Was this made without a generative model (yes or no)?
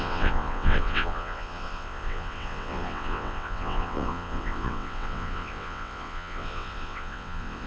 no